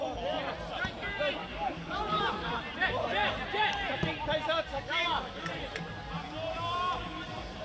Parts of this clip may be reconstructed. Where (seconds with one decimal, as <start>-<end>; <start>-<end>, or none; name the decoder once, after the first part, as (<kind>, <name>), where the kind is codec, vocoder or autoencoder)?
1.4-2.5 (codec, DAC); 4.7-5.5